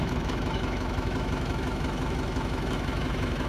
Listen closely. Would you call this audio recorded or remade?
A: remade